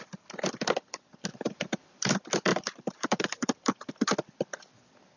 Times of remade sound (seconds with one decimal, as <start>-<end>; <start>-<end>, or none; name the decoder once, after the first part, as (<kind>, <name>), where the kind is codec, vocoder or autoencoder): 1.3-2.1 (vocoder, BigVGAN v2); 2.5-3.9